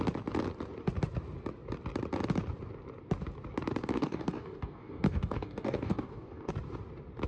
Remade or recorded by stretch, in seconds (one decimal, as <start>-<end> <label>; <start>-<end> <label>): 0.0-3.8 recorded; 3.8-6.5 remade; 6.5-7.3 recorded